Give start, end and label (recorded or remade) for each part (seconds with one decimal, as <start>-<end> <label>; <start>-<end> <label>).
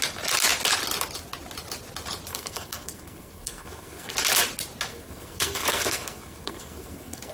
0.0-2.3 recorded; 2.3-4.1 remade; 4.1-4.9 recorded; 4.9-7.3 remade